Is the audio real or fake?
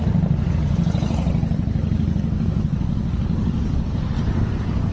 real